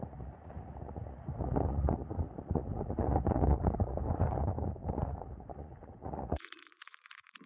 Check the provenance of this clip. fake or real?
fake